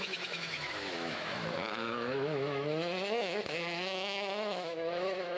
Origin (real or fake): fake